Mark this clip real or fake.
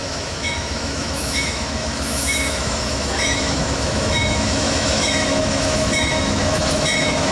fake